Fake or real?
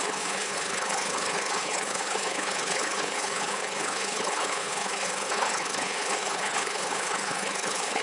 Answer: fake